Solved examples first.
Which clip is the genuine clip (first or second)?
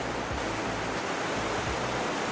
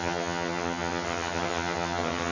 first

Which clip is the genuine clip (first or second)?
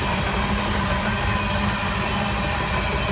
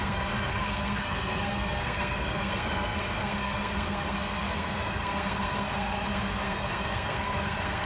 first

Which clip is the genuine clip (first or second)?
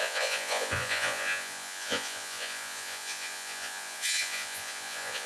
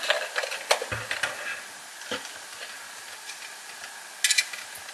second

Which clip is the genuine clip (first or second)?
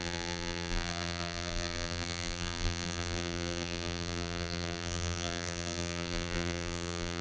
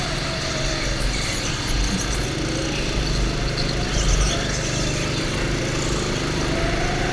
second